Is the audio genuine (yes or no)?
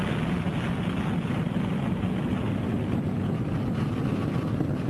yes